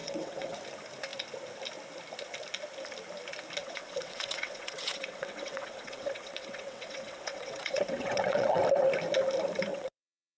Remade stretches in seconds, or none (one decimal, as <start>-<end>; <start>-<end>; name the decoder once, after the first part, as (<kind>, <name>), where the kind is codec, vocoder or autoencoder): 0.0-0.6 (vocoder, WaveNeXt); 3.6-8.6; 9.7-10.4

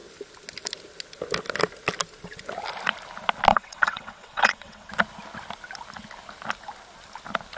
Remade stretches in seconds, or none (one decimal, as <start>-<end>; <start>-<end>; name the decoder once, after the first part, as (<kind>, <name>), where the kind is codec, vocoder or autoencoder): 3.5-4.9 (vocoder, WaveNeXt)

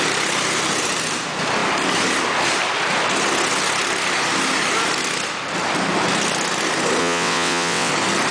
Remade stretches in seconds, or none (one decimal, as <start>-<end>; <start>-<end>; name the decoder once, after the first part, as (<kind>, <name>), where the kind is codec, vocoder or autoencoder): 7.0-7.9 (vocoder, WaveNeXt)

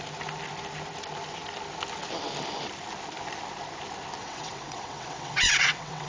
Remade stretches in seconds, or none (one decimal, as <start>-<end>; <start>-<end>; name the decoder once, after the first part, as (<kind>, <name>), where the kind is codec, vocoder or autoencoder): 4.2-6.1 (vocoder, WaveNeXt)

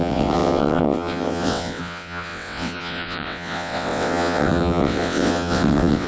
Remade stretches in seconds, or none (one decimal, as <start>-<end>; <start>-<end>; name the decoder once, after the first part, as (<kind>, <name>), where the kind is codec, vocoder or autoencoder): 0.0-6.1 (vocoder, WaveNeXt)

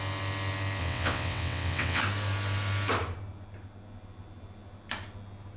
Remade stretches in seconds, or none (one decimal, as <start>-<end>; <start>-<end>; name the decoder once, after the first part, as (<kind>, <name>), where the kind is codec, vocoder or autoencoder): 0.8-2.0 (vocoder, WaveNeXt)

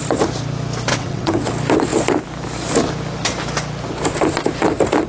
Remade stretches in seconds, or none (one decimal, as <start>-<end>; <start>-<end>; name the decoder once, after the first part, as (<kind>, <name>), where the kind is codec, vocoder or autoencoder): 0.9-1.5 (vocoder, WaveNeXt)

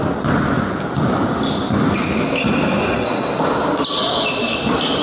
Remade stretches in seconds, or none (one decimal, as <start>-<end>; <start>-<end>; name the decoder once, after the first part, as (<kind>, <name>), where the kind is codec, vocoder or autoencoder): 2.8-3.4 (vocoder, WaveNeXt)